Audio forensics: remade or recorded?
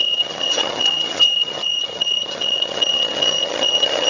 remade